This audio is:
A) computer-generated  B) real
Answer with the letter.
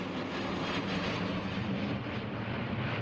B